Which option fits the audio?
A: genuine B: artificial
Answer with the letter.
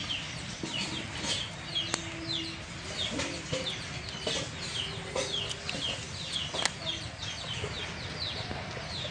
A